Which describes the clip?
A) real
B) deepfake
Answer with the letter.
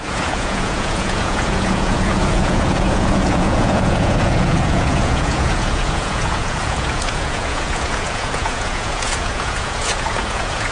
B